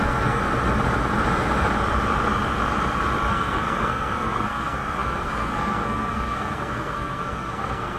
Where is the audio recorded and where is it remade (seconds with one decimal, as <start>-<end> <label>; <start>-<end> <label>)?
0.0-0.4 remade; 0.4-3.3 recorded; 3.3-8.0 remade